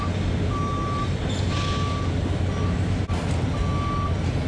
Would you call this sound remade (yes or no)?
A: no